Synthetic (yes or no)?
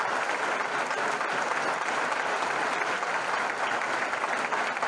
yes